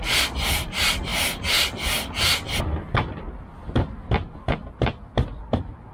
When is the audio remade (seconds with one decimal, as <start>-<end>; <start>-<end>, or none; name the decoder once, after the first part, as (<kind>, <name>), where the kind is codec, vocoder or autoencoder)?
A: none